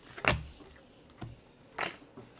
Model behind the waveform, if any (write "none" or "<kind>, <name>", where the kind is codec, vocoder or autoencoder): none